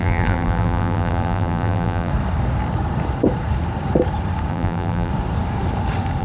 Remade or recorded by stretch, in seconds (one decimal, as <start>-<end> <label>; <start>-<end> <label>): 0.0-2.1 remade; 2.1-4.5 recorded; 4.5-5.1 remade; 5.1-6.2 recorded